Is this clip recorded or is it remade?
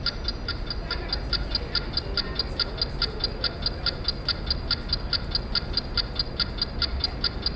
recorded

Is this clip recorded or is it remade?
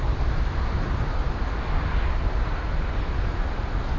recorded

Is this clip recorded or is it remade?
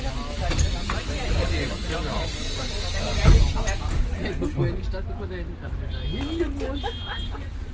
recorded